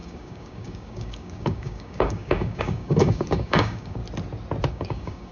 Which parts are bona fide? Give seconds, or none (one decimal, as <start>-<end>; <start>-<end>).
4.0-4.7

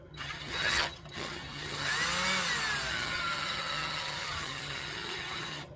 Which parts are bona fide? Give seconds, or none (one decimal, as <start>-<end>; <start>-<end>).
1.9-2.9

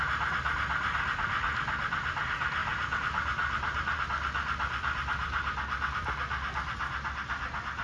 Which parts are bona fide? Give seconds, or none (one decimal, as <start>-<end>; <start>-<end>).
0.0-2.6; 4.0-7.8

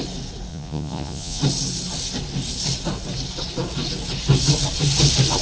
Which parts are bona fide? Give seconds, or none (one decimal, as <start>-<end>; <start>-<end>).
0.0-0.5; 1.4-5.4

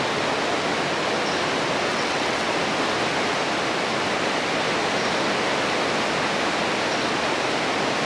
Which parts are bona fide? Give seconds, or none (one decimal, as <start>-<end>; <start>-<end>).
0.0-1.9; 2.5-8.1

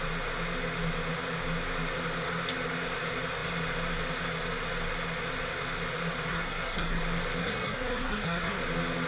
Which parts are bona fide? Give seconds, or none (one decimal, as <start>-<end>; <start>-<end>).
0.0-6.3; 7.0-7.4; 8.6-9.1

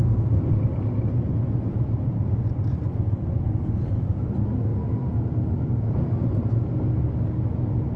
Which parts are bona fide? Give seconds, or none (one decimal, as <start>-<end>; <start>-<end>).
0.0-5.0; 6.5-8.0

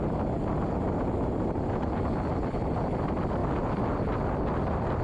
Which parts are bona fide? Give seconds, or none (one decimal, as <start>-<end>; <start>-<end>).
0.0-5.0